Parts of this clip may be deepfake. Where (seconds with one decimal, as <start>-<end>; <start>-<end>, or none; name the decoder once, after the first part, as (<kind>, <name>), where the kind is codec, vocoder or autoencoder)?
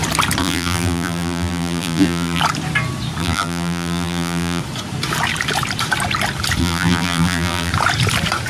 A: 0.4-2.4 (vocoder, BigVGAN v2); 3.2-4.6; 6.6-7.7